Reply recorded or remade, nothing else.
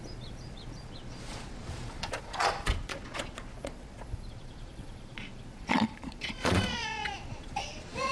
remade